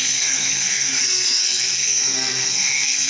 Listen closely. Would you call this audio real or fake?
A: fake